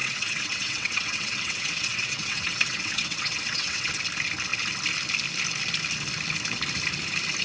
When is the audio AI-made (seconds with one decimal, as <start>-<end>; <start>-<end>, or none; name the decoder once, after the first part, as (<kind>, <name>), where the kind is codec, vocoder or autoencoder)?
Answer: 0.0-4.0 (vocoder, WaveNeXt)